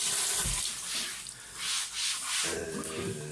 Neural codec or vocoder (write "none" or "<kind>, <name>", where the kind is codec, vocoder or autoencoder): none